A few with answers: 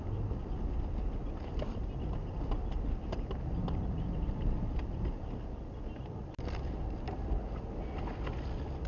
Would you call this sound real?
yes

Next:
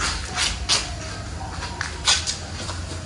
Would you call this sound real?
yes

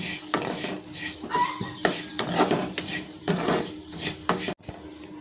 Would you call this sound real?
yes